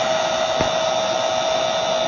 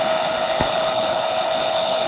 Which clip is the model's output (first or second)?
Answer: second